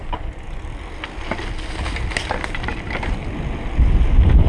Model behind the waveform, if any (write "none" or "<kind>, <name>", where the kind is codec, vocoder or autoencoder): none